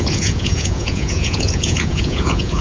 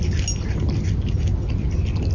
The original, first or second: second